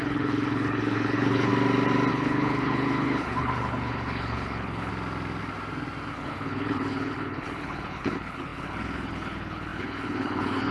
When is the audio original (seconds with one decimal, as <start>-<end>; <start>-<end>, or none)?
1.5-2.1; 4.9-6.1

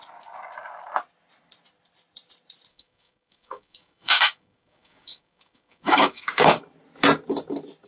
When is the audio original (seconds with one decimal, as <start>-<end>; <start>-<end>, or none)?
0.0-2.7; 6.6-7.9

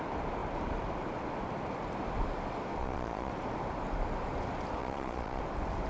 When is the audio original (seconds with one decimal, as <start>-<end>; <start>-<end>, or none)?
0.0-2.8; 3.3-4.8; 5.4-5.9

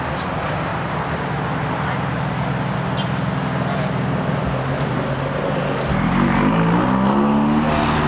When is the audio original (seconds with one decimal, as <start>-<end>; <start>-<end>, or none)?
0.0-8.1

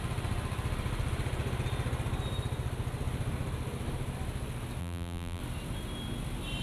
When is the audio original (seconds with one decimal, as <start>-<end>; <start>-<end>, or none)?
0.0-4.8; 5.4-6.6

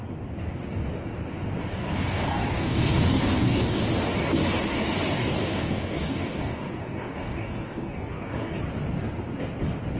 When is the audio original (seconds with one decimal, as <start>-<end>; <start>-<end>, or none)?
0.0-1.7; 3.8-5.2; 8.6-10.0

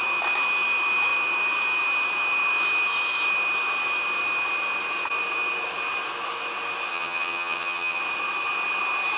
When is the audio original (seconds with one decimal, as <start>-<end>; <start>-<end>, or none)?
0.0-6.9; 8.0-9.2

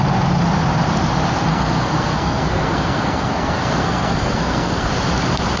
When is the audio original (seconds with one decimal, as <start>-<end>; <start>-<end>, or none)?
0.0-1.5; 4.9-5.6